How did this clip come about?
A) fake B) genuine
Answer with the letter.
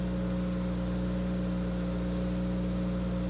B